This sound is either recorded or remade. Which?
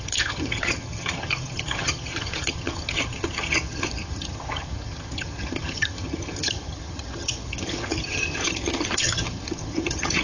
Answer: remade